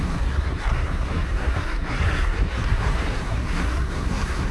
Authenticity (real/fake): fake